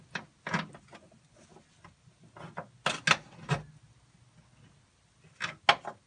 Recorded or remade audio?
recorded